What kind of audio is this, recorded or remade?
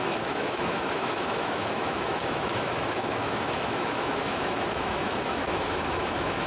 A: remade